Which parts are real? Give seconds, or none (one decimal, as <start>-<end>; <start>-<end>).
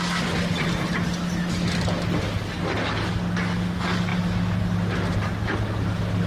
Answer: 0.0-6.3